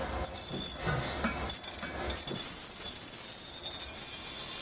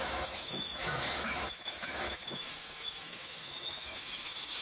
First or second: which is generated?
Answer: second